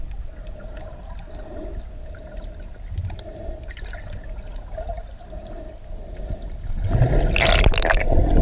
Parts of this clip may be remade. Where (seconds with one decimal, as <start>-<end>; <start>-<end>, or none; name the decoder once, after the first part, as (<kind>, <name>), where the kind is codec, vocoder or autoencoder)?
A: none